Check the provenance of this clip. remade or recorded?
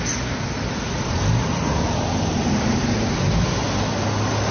recorded